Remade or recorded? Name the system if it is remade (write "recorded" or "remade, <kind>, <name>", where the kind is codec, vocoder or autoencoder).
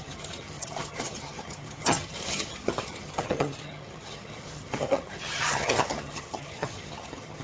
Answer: remade, vocoder, HiFi-GAN